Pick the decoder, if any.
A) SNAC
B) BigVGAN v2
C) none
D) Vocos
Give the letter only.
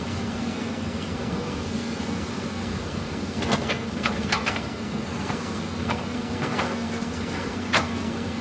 A